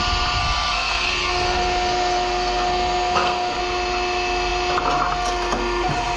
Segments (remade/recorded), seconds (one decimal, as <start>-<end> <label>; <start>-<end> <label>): 0.0-0.4 recorded; 0.4-3.6 remade; 3.6-6.2 recorded